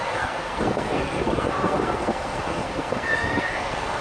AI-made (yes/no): yes